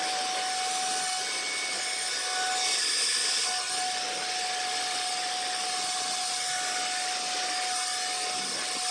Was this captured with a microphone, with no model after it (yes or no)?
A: yes